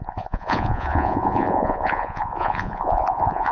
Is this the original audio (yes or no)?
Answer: no